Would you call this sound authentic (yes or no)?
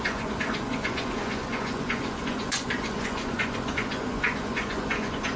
no